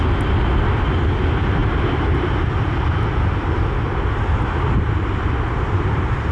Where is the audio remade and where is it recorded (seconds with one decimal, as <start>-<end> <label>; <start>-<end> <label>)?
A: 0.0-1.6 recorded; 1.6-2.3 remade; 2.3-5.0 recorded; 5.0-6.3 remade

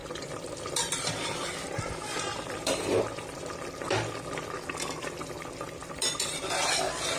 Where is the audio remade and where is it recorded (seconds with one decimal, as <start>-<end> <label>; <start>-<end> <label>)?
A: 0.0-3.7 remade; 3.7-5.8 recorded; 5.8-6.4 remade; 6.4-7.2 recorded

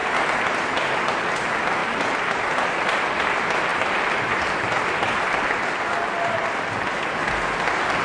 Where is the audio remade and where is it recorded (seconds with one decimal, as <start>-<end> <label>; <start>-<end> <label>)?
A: 0.0-1.1 remade; 1.1-1.8 recorded; 1.8-2.4 remade; 2.4-3.7 recorded; 3.7-5.4 remade; 5.4-8.0 recorded

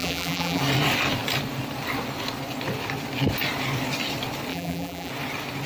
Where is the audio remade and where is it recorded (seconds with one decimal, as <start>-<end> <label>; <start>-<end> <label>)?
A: 0.0-0.6 remade; 0.6-4.5 recorded; 4.5-5.1 remade; 5.1-5.7 recorded